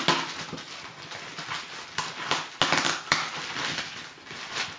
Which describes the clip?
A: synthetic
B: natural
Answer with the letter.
B